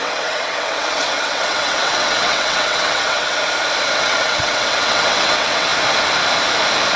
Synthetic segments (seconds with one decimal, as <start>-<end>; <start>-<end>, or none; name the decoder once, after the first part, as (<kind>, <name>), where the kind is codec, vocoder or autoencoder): 0.0-3.3 (vocoder, WaveNeXt); 3.9-5.7